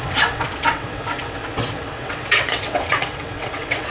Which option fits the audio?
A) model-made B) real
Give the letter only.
A